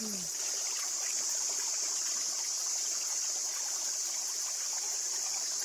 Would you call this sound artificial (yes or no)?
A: no